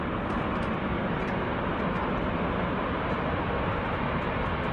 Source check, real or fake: real